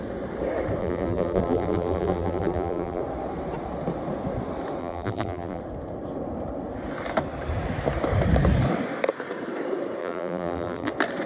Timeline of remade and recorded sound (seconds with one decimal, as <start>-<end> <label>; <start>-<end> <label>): 0.0-0.8 recorded; 0.8-3.0 remade; 3.0-4.8 recorded; 4.8-5.6 remade; 5.6-10.0 recorded; 10.0-10.9 remade; 10.9-11.3 recorded